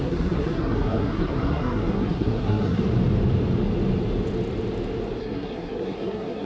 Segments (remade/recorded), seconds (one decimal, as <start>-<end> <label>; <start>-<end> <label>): 0.0-2.8 remade; 2.8-5.2 recorded; 5.2-6.5 remade